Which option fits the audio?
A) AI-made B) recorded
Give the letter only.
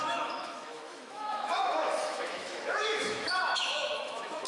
A